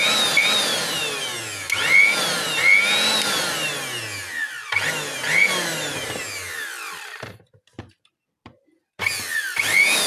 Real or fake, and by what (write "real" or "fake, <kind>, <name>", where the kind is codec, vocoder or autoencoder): real